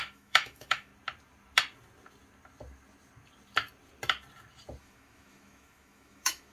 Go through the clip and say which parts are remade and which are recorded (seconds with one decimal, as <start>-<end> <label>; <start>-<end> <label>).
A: 0.0-0.9 remade; 0.9-4.8 recorded; 4.8-6.5 remade

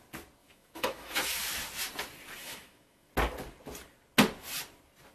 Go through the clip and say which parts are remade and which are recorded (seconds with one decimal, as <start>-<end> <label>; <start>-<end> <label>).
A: 0.0-0.4 recorded; 0.4-1.3 remade; 1.3-2.4 recorded; 2.4-3.1 remade; 3.1-5.1 recorded